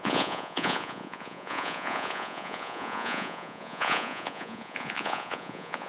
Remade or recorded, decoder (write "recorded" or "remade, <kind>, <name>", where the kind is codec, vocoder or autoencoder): remade, vocoder, Vocos